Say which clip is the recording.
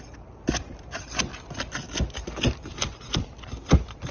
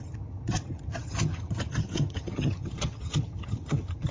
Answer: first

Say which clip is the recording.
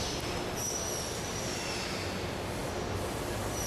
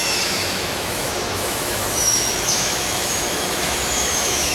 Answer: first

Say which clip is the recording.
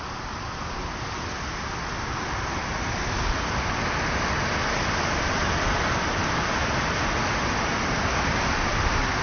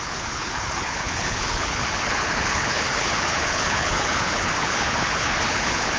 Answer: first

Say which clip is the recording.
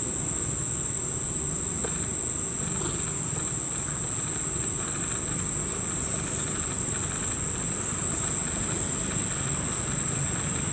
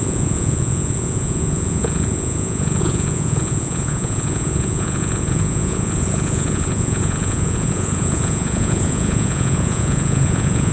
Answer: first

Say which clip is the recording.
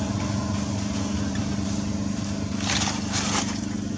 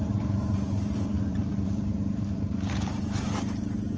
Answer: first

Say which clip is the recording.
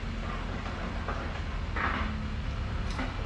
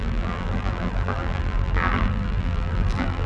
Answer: first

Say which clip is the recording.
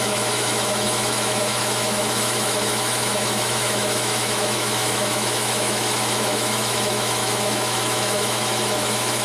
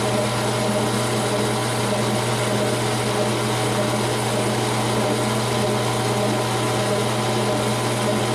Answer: second